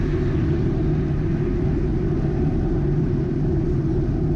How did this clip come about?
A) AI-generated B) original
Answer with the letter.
B